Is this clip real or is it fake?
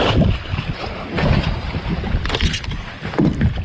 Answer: real